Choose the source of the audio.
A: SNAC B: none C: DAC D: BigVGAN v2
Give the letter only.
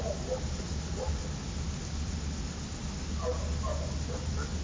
B